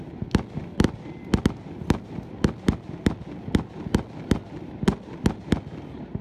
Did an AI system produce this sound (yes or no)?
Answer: no